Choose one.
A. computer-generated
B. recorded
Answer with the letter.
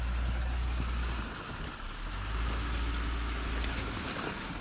B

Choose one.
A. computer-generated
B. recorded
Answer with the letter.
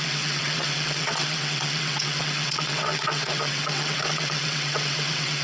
A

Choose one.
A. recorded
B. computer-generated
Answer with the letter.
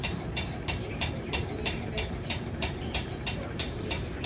B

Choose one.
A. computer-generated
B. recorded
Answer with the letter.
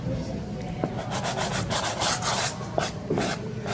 B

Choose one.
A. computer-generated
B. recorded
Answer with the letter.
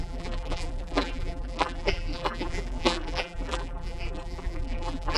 A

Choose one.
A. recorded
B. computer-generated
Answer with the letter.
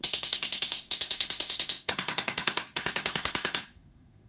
B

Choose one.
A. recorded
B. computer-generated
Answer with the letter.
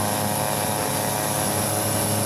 A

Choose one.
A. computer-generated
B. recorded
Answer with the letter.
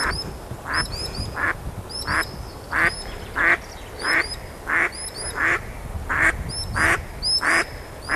B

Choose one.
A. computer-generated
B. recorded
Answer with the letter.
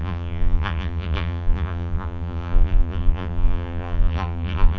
A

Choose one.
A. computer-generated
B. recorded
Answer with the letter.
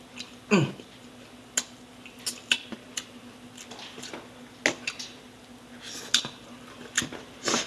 B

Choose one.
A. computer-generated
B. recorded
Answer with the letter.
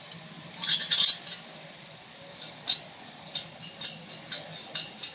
B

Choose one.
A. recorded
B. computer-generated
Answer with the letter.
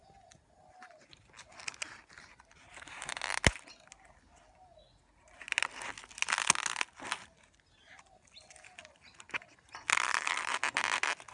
A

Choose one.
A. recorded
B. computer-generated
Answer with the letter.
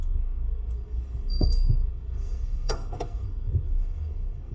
B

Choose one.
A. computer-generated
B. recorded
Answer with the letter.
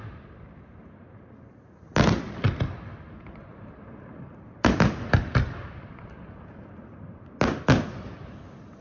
B